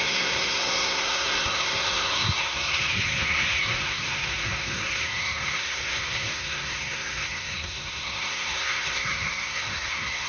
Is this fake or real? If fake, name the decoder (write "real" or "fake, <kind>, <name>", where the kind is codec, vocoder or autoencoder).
fake, codec, SNAC